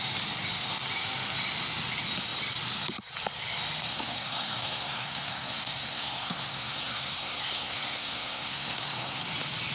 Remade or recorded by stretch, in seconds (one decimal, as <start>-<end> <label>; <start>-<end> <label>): 0.0-3.9 recorded; 3.9-9.2 remade; 9.2-9.7 recorded